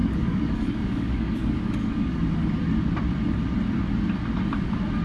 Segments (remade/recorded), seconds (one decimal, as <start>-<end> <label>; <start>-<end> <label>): 0.0-2.2 remade; 2.2-5.0 recorded